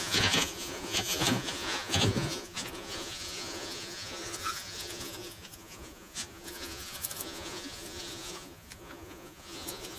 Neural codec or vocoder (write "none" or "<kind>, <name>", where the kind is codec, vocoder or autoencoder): vocoder, Vocos